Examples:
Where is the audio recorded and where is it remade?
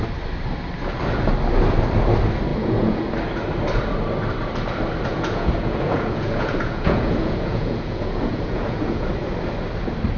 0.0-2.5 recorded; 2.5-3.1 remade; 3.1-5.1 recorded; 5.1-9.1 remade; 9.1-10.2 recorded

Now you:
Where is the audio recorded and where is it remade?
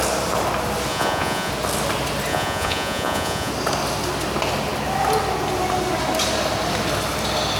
0.0-0.9 recorded; 0.9-1.5 remade; 1.5-2.3 recorded; 2.3-3.5 remade; 3.5-7.6 recorded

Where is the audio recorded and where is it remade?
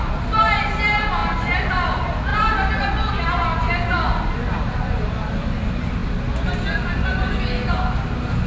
0.0-8.5 recorded